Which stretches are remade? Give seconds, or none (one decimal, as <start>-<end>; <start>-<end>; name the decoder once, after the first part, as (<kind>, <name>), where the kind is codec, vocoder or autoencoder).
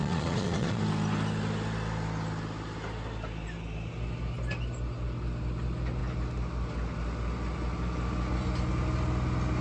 0.0-0.8 (vocoder, Vocos)